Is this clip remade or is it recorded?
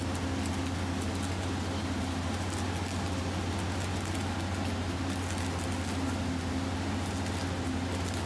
recorded